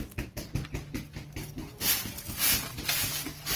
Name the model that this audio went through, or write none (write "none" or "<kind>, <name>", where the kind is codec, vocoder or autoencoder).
none